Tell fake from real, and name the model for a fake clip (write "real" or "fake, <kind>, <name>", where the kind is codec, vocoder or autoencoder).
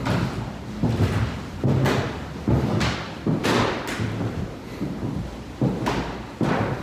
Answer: real